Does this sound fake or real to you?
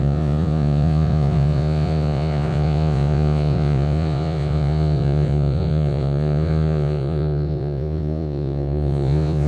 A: fake